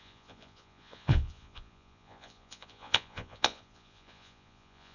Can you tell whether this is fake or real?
fake